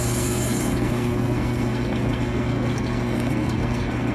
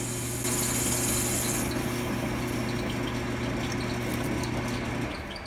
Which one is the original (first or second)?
second